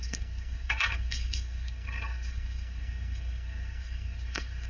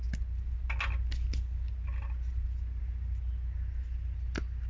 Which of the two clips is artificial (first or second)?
first